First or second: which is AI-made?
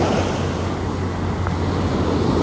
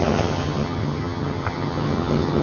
second